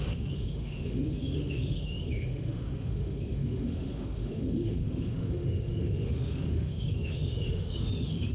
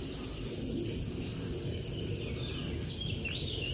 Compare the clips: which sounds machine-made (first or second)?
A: first